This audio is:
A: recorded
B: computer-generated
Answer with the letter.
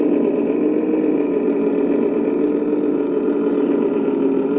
A